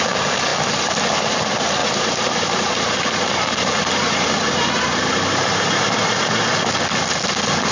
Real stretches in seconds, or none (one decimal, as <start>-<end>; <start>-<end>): 0.0-1.8; 6.4-7.7